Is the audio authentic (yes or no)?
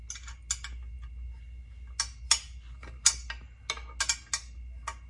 yes